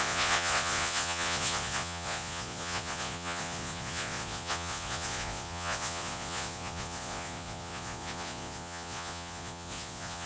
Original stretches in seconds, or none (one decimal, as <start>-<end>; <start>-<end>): none

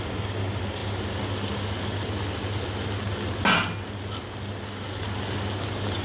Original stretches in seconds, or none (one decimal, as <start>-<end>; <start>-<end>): 0.0-6.0

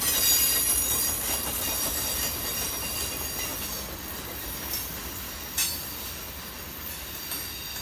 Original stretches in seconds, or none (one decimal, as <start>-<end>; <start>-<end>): 0.0-7.8

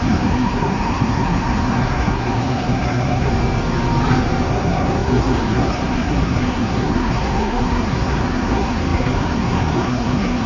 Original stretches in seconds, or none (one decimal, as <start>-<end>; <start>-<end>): 3.3-4.5

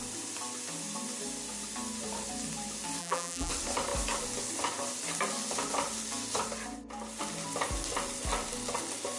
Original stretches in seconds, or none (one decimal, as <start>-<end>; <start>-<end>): 0.0-3.0; 3.5-9.2

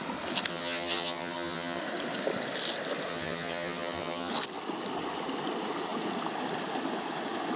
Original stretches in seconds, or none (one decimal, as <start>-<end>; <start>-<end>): 0.0-0.5; 1.8-3.1; 4.3-7.6

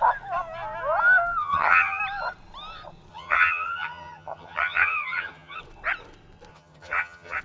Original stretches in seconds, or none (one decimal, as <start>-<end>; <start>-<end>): 0.0-1.4; 2.0-3.1; 5.6-6.5

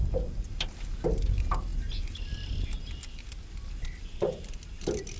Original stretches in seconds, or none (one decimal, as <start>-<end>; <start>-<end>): 0.0-5.2